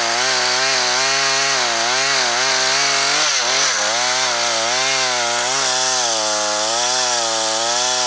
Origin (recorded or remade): recorded